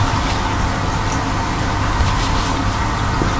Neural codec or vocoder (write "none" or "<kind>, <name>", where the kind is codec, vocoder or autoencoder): none